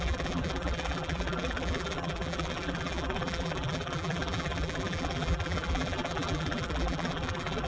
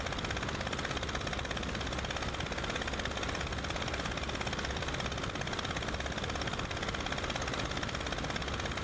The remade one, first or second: first